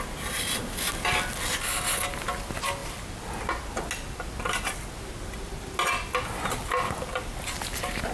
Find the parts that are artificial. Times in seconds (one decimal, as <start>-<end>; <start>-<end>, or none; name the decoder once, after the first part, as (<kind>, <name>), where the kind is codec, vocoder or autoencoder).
none